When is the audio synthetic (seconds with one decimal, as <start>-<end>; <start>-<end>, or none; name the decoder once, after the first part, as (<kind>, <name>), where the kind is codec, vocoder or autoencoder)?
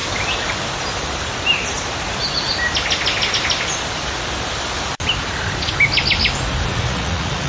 6.7-7.5 (vocoder, Vocos)